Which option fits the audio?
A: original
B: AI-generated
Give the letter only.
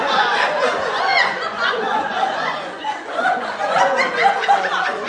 B